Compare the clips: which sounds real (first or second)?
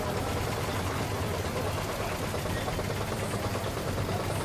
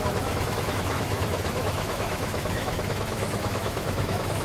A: first